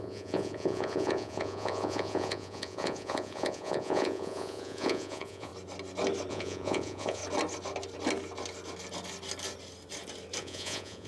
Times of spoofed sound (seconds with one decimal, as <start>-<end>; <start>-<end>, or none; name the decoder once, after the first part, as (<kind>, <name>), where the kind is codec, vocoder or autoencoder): 0.0-5.5 (vocoder, Vocos); 6.3-7.2; 10.4-11.1